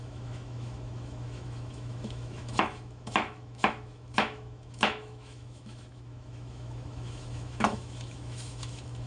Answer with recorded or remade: remade